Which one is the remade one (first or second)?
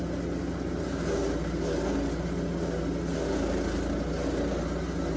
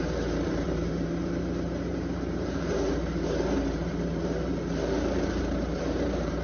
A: second